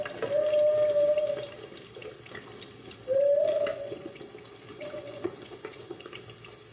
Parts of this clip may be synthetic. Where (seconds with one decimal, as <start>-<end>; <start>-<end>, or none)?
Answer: 3.7-4.3; 4.7-6.1